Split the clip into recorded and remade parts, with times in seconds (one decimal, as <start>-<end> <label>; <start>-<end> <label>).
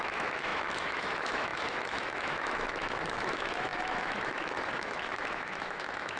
0.0-6.2 remade